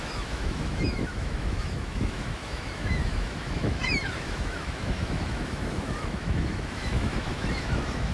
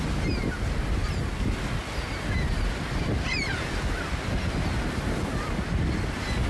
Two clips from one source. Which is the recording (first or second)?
second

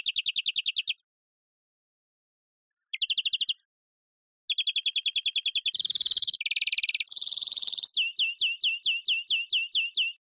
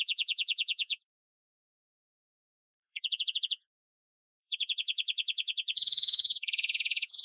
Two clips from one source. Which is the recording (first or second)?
first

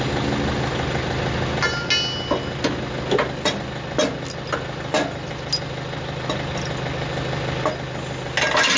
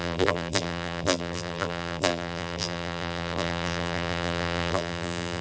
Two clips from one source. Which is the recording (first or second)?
first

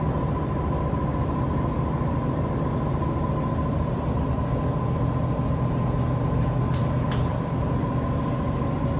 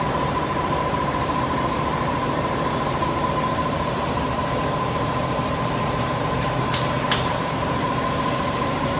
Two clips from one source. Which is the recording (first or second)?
first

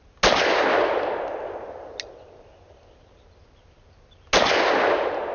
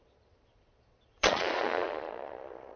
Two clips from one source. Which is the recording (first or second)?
first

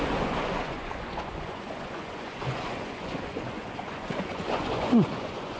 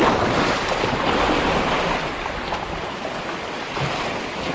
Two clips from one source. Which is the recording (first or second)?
second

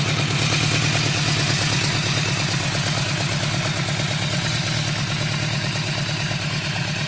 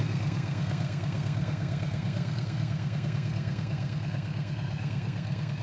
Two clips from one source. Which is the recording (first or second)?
first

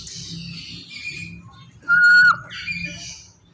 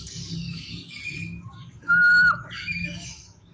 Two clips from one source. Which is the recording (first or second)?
first